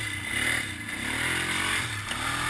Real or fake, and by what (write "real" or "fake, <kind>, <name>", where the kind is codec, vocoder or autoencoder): real